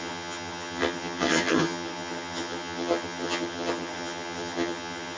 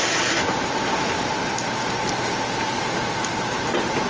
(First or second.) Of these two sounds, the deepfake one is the first